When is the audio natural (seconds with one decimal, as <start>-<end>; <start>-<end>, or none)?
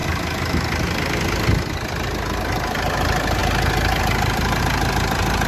0.0-5.5